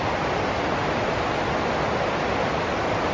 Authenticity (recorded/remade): recorded